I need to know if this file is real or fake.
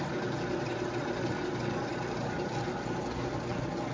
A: real